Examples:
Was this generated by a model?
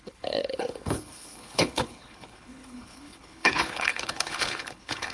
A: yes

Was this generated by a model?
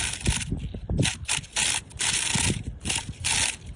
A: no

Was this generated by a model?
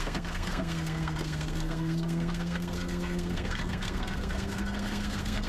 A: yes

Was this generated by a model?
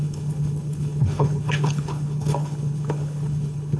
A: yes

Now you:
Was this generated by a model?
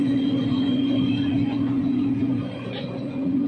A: yes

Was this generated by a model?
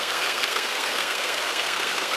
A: yes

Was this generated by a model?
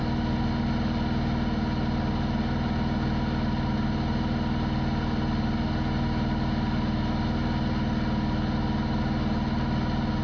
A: no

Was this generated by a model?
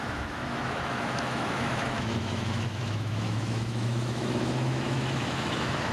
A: yes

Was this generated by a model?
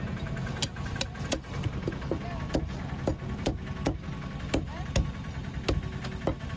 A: no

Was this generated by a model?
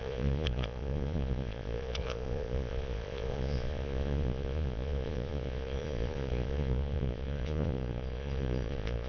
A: yes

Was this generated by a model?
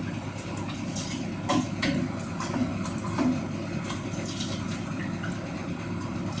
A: no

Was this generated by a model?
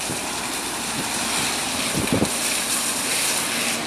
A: no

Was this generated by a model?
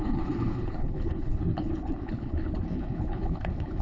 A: yes